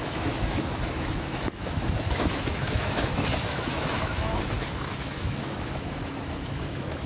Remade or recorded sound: remade